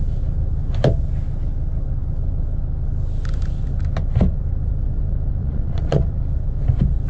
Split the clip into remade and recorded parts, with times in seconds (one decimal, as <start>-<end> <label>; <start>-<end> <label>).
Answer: 0.0-5.4 recorded; 5.4-6.1 remade; 6.1-7.1 recorded